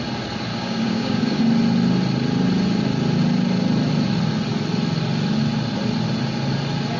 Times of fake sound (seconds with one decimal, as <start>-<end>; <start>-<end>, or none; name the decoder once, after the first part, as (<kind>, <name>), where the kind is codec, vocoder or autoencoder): 0.5-1.4 (codec, DAC)

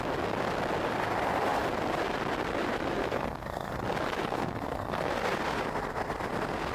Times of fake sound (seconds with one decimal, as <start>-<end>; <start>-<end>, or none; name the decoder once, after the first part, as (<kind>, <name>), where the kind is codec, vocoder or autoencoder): 3.0-3.7 (codec, SNAC); 4.2-5.1